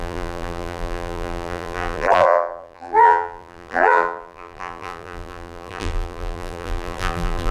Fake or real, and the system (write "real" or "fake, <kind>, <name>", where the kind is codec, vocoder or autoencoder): fake, vocoder, BigVGAN v2